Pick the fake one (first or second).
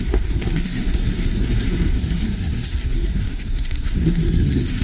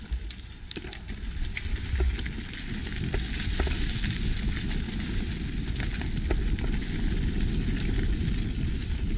first